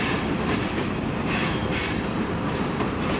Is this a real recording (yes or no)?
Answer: yes